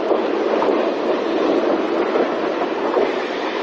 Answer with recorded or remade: recorded